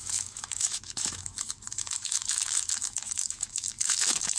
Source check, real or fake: fake